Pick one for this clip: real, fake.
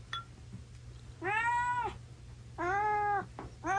real